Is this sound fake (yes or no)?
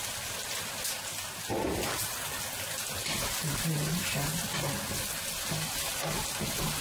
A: no